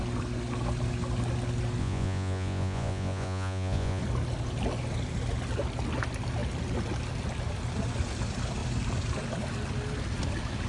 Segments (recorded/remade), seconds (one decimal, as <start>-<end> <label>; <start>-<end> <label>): 0.0-1.8 recorded; 1.8-4.0 remade; 4.0-10.7 recorded

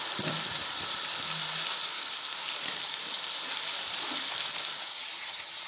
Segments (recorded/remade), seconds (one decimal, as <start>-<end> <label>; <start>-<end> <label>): 0.0-4.9 recorded; 4.9-5.7 remade